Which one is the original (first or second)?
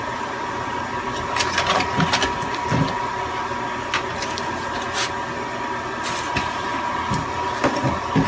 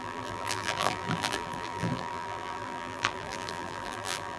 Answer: first